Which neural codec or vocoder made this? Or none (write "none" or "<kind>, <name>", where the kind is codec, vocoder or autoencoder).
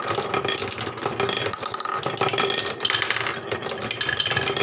none